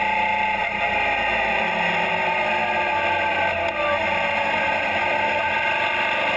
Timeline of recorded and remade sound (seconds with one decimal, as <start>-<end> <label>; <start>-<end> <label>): 0.0-6.4 recorded